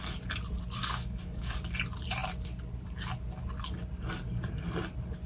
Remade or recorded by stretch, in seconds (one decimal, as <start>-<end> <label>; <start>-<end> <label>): 0.0-0.8 recorded; 0.8-1.7 remade; 1.7-5.3 recorded